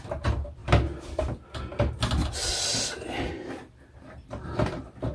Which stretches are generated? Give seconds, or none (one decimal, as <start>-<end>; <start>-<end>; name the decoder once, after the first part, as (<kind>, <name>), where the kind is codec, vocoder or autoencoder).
none